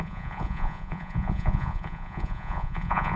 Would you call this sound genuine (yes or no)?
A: no